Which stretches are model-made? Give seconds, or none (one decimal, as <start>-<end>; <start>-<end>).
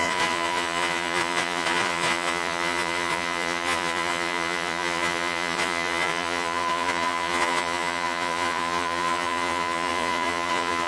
0.0-10.9